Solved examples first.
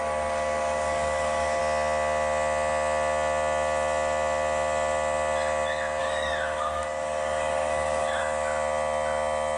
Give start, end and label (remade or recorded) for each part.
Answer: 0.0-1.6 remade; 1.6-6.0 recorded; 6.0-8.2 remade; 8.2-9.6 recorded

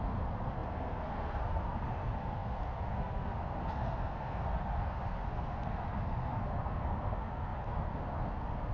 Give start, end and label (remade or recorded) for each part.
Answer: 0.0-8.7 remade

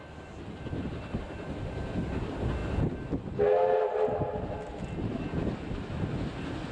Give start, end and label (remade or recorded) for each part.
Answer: 0.0-6.7 recorded

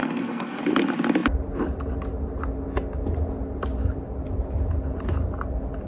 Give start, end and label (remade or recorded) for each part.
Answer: 0.0-0.6 remade; 0.6-5.9 recorded

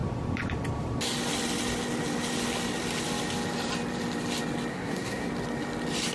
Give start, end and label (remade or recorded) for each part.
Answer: 0.0-4.7 recorded; 4.7-5.3 remade; 5.3-6.1 recorded

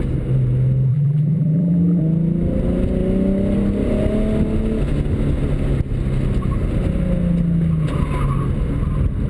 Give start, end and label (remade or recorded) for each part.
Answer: 0.0-0.9 recorded; 0.9-2.0 remade; 2.0-9.3 recorded

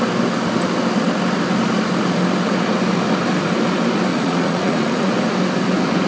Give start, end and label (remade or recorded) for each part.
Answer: 0.0-4.1 recorded; 4.1-5.1 remade; 5.1-6.1 recorded